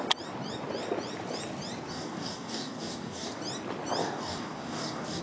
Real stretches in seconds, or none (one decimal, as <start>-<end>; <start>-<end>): 0.0-1.9; 3.4-4.0